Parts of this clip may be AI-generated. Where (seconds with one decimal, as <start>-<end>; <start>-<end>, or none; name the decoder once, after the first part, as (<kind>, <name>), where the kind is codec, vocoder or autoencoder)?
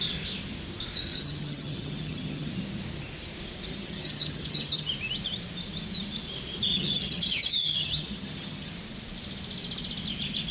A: 1.1-2.5 (vocoder, HiFi-GAN); 3.7-4.9; 6.7-8.7